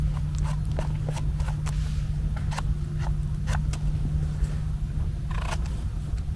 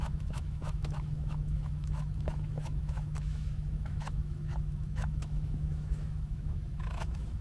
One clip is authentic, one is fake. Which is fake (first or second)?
second